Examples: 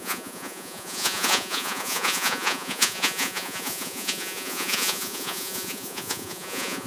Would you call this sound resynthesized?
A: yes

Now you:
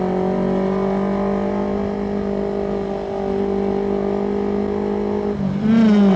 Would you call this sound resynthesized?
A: no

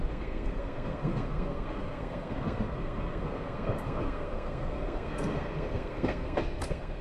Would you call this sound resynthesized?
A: yes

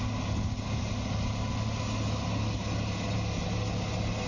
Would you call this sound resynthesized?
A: no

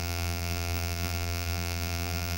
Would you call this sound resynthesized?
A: yes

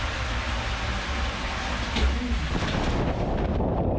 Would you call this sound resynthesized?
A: no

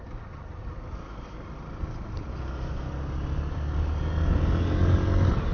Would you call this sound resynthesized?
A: no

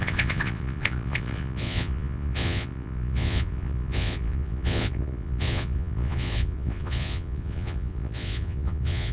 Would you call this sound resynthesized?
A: yes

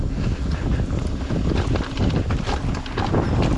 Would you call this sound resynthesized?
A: no